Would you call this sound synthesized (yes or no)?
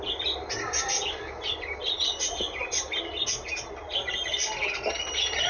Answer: no